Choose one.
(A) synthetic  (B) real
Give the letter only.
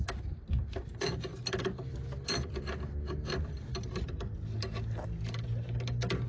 B